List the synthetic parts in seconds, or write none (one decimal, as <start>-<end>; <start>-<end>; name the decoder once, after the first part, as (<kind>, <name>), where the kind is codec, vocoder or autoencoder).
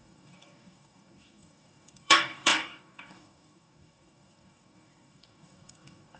0.0-6.2 (codec, DAC)